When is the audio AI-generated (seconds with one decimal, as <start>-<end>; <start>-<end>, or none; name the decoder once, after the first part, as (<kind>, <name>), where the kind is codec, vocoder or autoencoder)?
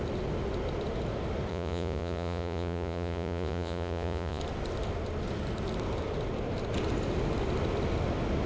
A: 1.5-4.4 (vocoder, Vocos)